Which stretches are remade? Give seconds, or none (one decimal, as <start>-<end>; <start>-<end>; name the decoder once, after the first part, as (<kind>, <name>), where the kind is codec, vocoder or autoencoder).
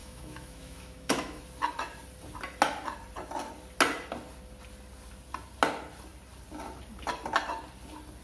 0.0-1.4 (autoencoder, DAC-VAE)